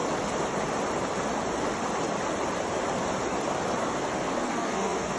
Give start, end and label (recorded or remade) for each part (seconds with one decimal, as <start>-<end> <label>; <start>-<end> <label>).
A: 0.0-3.8 recorded; 3.8-5.2 remade

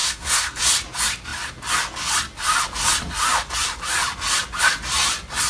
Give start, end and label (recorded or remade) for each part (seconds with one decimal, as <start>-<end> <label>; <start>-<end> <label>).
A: 0.0-0.6 remade; 0.6-5.5 recorded

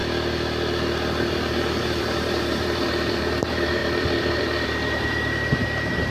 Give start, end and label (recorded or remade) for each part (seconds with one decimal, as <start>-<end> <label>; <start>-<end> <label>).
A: 0.0-1.8 recorded; 1.8-6.1 remade

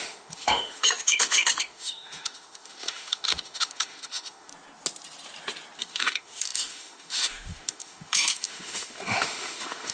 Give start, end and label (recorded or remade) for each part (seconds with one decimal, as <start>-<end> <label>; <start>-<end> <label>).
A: 0.0-4.5 remade; 4.5-5.8 recorded; 5.8-9.9 remade

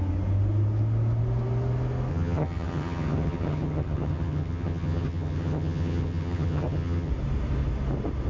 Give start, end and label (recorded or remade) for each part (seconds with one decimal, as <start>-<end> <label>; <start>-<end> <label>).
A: 0.0-2.1 recorded; 2.1-7.1 remade; 7.1-8.3 recorded

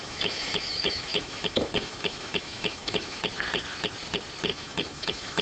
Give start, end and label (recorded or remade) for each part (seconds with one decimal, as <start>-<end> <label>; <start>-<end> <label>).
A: 0.0-3.2 remade; 3.2-4.5 recorded; 4.5-5.4 remade